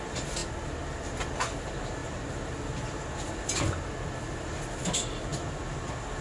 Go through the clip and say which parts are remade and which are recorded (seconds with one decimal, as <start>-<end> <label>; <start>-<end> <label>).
0.0-6.2 recorded